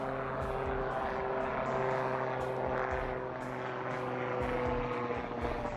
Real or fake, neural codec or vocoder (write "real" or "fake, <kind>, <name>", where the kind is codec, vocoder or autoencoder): real